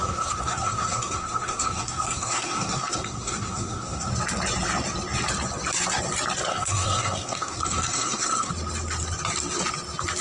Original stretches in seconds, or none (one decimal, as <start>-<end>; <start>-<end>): 4.1-6.5; 8.5-10.2